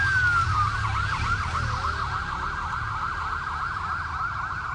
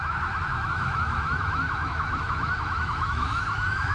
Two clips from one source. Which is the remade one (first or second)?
second